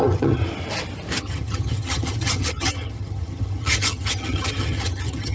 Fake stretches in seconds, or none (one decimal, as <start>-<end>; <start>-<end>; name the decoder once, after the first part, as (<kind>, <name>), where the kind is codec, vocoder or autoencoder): 0.0-0.4 (vocoder, HiFi-GAN); 1.2-5.3